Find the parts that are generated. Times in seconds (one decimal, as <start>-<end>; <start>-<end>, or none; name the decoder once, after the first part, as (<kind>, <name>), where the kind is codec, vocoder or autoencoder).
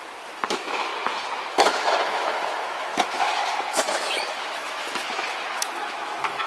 0.0-0.9 (autoencoder, DAC-VAE); 1.5-6.5